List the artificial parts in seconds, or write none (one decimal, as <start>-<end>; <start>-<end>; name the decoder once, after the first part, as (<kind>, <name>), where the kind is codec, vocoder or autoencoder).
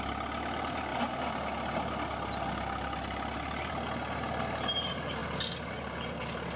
none